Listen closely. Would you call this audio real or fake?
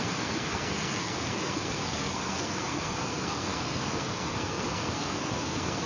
fake